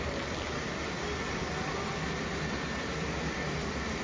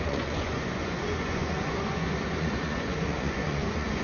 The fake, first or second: second